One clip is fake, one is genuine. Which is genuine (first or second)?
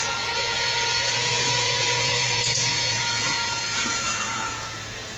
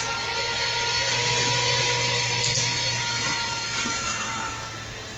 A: second